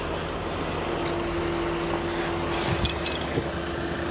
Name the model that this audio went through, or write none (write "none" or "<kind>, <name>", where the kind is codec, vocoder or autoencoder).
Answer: none